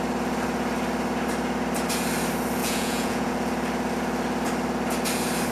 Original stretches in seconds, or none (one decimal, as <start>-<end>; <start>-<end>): 0.0-2.6; 3.3-5.5